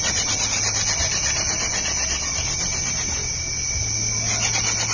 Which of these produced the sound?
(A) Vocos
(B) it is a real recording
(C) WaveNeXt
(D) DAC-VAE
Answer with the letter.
B